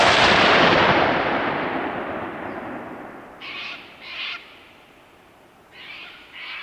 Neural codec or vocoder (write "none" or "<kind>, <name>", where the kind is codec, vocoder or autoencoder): none